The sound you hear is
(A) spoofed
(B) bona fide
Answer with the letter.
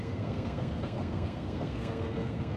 A